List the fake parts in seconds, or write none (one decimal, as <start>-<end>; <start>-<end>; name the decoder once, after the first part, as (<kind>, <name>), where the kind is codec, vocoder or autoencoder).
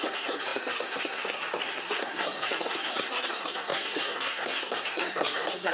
0.0-5.7 (codec, SNAC)